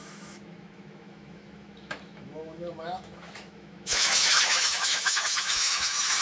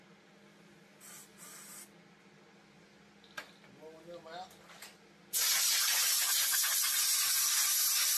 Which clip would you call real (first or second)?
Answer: second